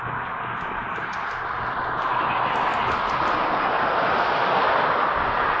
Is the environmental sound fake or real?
real